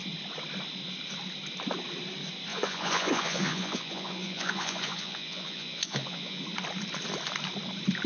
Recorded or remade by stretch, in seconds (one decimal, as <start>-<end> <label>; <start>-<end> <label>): 0.0-2.5 recorded; 2.5-6.4 remade; 6.4-8.1 recorded